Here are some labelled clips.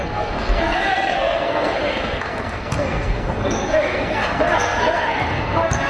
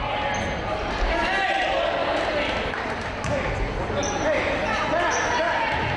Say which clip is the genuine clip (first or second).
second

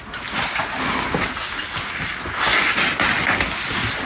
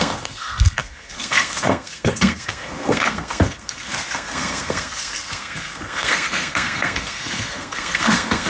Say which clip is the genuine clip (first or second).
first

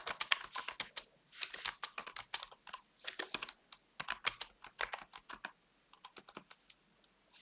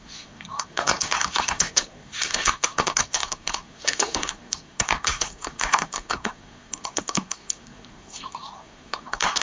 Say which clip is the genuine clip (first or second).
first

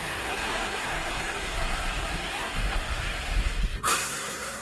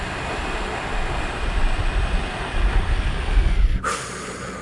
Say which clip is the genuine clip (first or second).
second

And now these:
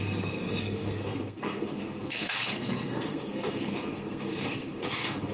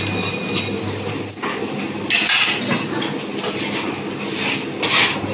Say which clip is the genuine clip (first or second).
second